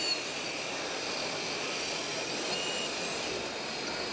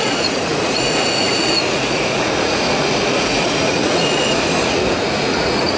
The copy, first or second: second